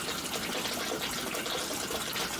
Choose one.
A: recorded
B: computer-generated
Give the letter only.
A